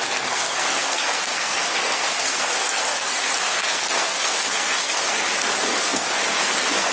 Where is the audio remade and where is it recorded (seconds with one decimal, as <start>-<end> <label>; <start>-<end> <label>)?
0.0-6.9 remade